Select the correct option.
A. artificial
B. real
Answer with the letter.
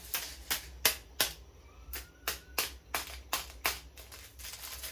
B